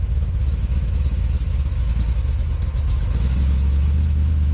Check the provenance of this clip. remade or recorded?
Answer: remade